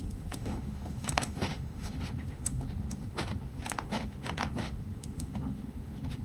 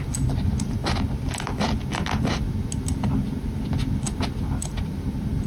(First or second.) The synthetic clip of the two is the first